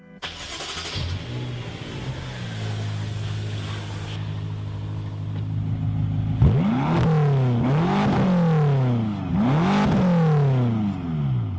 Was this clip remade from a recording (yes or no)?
no